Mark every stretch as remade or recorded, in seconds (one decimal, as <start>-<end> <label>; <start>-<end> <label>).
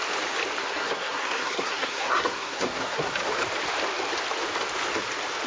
0.0-0.6 recorded; 0.6-3.1 remade; 3.1-5.5 recorded